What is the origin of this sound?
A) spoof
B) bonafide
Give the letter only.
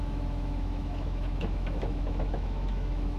A